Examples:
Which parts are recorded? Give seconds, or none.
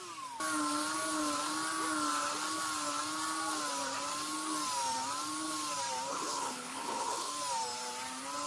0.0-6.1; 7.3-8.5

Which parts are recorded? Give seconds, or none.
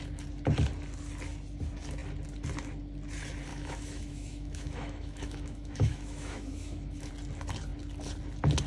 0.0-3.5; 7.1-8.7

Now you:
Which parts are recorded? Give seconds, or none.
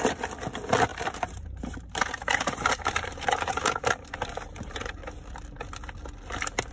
0.0-0.9; 4.9-6.7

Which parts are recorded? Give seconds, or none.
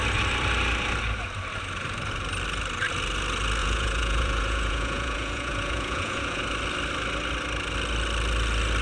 0.0-3.6; 6.4-8.8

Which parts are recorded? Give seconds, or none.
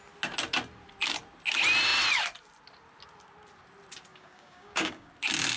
0.0-4.1; 5.1-5.6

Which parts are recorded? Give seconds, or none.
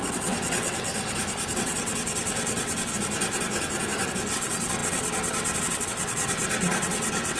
0.9-1.5; 2.9-4.3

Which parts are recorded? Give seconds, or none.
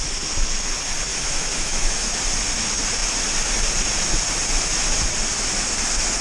0.0-1.1; 2.1-6.2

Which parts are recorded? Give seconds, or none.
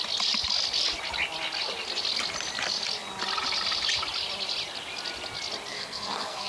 0.0-5.7